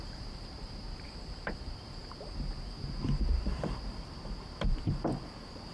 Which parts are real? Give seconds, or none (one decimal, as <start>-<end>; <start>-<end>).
none